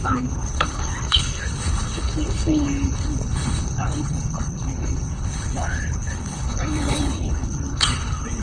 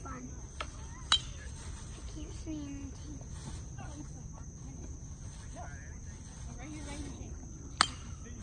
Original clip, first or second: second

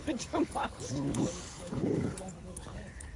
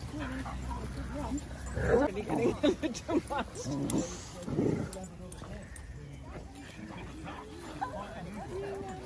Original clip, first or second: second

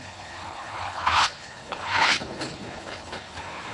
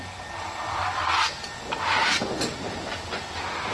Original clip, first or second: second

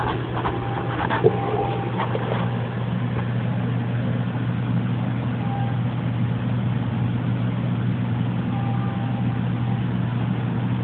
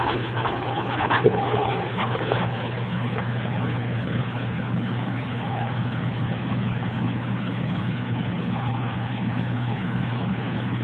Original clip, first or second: first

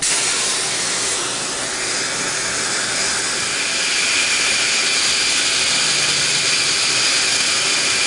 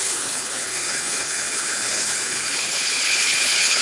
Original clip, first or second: first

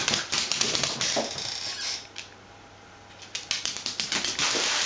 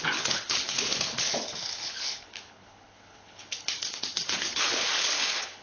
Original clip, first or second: first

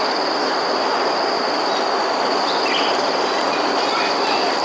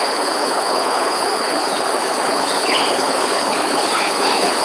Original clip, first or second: first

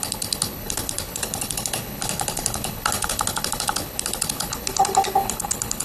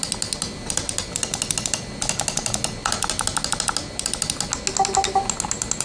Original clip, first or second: second